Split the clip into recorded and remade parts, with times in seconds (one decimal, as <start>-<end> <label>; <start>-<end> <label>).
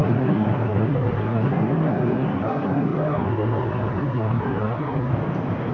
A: 0.0-5.1 remade; 5.1-5.7 recorded